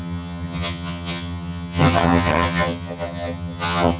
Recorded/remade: remade